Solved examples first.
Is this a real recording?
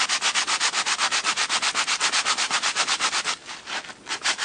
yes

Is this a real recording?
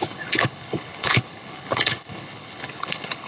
no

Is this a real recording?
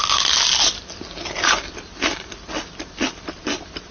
yes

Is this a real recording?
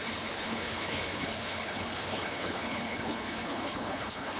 no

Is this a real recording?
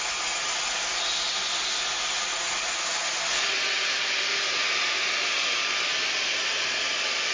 yes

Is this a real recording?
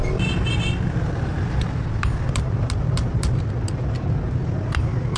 yes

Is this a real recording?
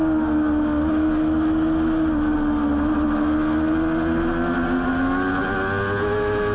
yes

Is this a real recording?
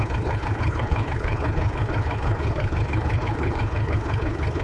no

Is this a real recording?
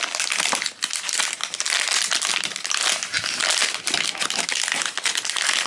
yes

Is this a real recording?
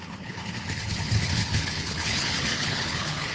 no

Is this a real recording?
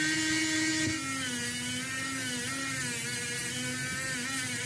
yes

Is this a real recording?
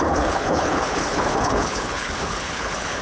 no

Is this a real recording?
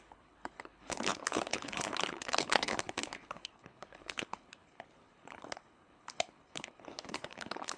no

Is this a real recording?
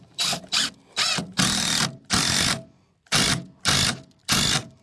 yes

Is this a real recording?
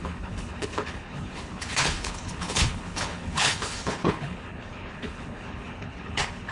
no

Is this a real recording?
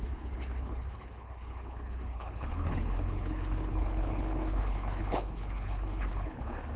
no